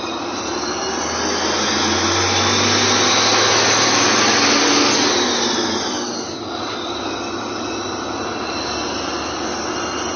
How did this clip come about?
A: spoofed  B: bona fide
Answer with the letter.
B